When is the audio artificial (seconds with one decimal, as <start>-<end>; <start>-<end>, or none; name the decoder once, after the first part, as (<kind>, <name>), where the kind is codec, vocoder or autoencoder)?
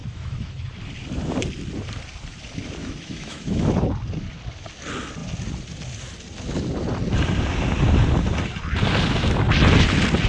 0.0-0.7 (autoencoder, DAC-VAE); 2.8-3.6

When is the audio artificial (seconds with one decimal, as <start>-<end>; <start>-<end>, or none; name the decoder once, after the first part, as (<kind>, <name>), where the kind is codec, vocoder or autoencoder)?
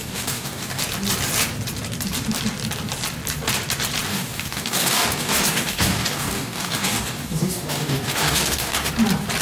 0.0-0.8 (codec, DAC); 4.1-8.9